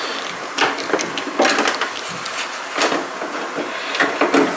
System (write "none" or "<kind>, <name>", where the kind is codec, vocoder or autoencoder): none